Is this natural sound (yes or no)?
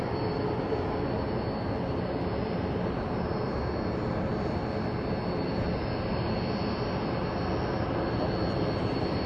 yes